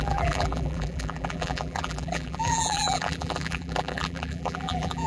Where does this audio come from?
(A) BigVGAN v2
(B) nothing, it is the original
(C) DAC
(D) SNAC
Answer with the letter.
A